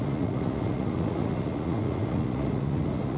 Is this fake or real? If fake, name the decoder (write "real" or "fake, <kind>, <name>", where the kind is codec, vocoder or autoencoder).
fake, vocoder, Vocos